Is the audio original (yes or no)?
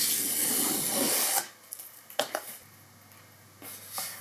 yes